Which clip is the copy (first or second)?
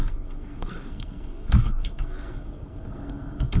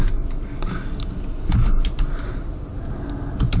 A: first